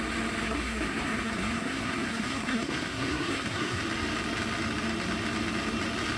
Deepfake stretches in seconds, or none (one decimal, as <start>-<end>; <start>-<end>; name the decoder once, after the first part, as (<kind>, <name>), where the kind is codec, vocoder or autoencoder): 0.4-3.8 (codec, SNAC)